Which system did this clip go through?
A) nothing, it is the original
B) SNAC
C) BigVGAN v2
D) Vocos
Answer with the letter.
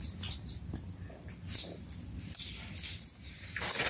A